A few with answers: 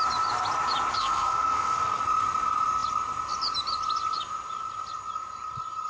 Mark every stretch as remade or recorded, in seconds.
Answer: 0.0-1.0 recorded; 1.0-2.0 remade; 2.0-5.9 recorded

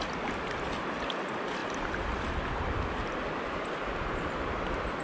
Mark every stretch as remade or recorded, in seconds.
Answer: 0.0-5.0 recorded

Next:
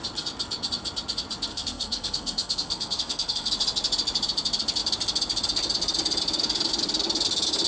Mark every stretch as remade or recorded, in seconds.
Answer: 0.0-1.5 recorded; 1.5-3.5 remade; 3.5-7.7 recorded

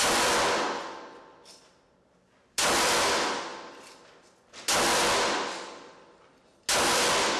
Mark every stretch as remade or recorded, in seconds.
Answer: 0.0-7.4 recorded

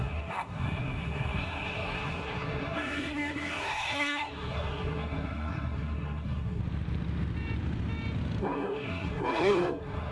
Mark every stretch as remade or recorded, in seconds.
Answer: 0.0-6.6 remade; 6.6-8.4 recorded; 8.4-10.1 remade

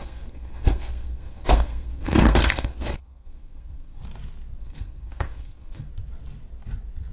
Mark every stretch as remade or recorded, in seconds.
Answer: 0.0-4.0 remade; 4.0-4.6 recorded; 4.6-5.9 remade; 5.9-7.1 recorded

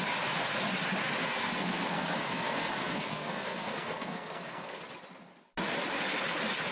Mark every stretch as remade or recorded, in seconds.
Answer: 0.0-1.2 recorded; 1.2-4.8 remade; 4.8-6.7 recorded